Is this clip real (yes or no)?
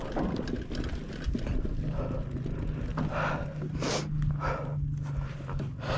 yes